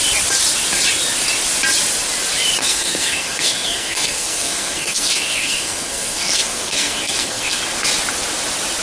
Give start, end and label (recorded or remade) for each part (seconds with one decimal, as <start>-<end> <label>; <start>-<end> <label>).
0.0-2.6 recorded; 2.6-7.6 remade; 7.6-8.8 recorded